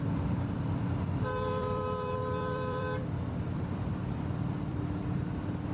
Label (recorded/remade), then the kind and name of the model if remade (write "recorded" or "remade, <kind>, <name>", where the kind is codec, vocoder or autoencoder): remade, vocoder, BigVGAN v2